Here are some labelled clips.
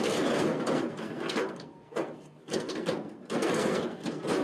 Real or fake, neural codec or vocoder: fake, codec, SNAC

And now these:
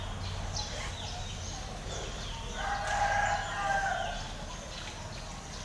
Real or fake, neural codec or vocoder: real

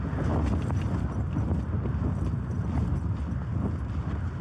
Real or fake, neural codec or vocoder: real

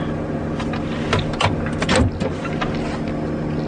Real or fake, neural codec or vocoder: real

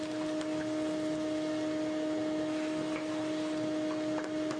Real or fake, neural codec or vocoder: real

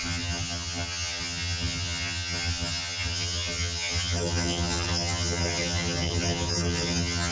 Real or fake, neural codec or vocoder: fake, vocoder, HiFi-GAN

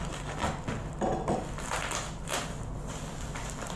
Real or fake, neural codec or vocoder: real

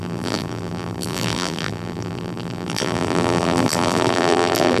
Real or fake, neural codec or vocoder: fake, vocoder, BigVGAN v2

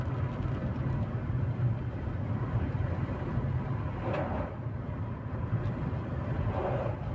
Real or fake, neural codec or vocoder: real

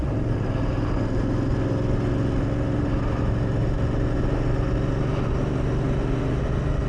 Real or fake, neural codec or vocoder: real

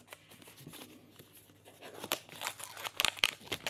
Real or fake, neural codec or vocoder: real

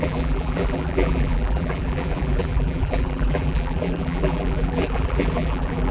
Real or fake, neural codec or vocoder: fake, vocoder, BigVGAN v2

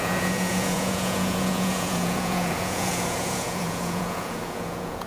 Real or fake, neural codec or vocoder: fake, vocoder, Vocos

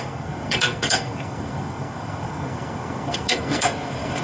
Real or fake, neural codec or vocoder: fake, codec, SNAC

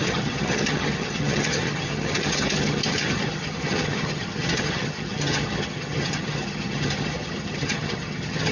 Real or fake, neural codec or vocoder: fake, vocoder, HiFi-GAN